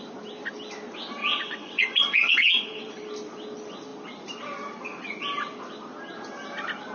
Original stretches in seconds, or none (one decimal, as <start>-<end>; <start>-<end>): 0.0-1.2; 2.9-6.9